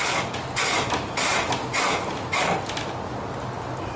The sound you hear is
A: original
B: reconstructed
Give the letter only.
A